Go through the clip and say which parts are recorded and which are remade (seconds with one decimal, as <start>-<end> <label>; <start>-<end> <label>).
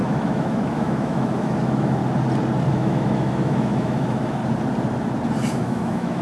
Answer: 0.0-2.0 remade; 2.0-2.7 recorded; 2.7-4.4 remade; 4.4-5.5 recorded; 5.5-6.2 remade